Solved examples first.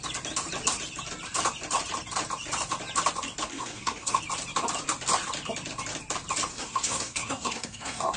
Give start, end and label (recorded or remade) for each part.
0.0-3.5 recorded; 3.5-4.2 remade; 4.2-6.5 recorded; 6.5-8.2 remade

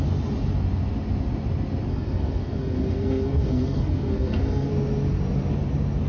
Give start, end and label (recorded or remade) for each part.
0.0-1.9 recorded; 1.9-4.7 remade; 4.7-6.1 recorded